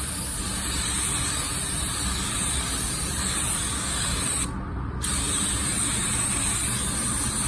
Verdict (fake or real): real